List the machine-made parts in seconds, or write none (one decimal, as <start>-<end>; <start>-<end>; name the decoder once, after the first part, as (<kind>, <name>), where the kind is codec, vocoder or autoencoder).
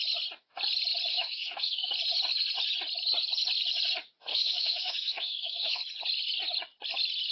1.1-1.9 (autoencoder, DAC-VAE); 4.3-5.8